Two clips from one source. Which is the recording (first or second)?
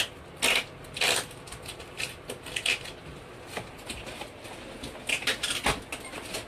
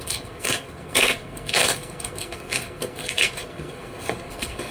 first